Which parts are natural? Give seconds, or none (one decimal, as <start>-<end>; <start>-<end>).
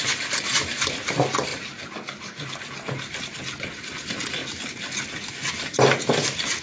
0.0-6.6